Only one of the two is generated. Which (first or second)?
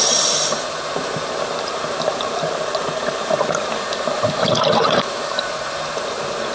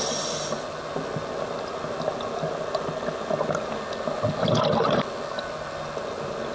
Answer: first